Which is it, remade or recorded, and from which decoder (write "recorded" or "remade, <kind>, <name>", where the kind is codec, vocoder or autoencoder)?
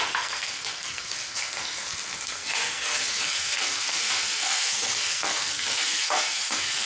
remade, codec, SNAC